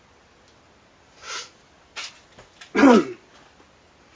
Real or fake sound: real